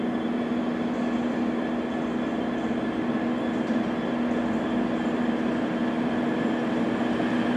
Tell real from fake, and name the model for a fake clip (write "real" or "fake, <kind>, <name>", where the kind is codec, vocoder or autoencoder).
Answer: real